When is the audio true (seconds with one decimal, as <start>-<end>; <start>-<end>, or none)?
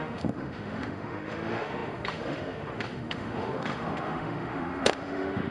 none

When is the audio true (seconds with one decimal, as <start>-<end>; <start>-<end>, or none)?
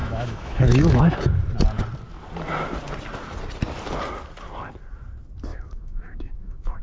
1.0-5.5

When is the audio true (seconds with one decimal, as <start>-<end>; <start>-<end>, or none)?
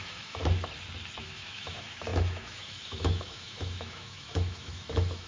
0.4-1.2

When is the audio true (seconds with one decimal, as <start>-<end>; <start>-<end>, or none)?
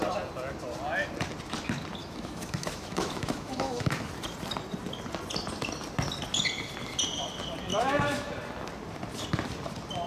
0.0-2.0; 4.1-7.7; 8.3-10.1